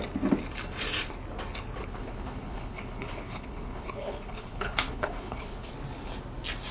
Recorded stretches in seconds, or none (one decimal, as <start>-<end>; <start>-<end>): 0.0-1.8; 5.7-6.7